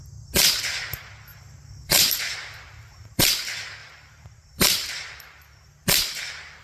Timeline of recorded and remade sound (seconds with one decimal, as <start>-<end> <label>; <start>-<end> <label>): 0.0-1.3 recorded; 1.3-3.2 remade; 3.2-3.8 recorded; 3.8-4.9 remade; 4.9-6.6 recorded